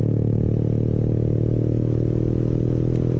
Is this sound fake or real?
real